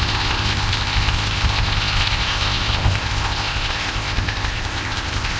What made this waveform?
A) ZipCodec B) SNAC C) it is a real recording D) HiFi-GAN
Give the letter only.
A